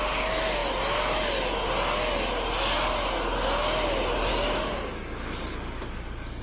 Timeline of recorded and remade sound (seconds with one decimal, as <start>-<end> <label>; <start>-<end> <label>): 0.0-6.4 recorded